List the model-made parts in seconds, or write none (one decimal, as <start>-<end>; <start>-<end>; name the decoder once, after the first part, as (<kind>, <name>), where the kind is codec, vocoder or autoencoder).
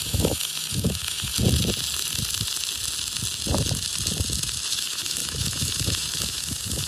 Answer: 0.0-1.3 (autoencoder, DAC-VAE); 4.7-6.9